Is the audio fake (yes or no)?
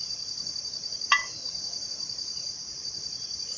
yes